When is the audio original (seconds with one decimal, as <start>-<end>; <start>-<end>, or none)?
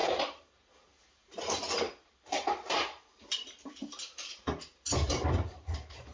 none